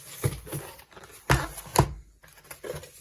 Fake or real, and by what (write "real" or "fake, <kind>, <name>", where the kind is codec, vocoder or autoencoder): real